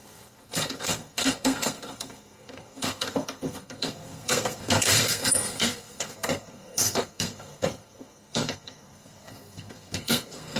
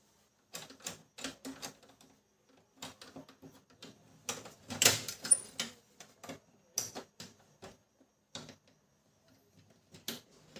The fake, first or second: first